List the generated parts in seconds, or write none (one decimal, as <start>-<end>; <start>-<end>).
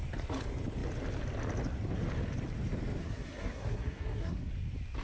3.0-4.5